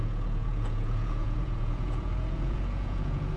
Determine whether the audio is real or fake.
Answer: fake